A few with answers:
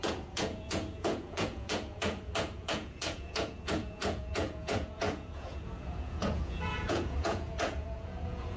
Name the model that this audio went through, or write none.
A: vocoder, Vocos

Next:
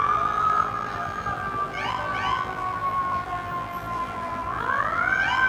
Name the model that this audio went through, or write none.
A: vocoder, BigVGAN v2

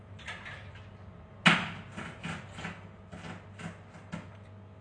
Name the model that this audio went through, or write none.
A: none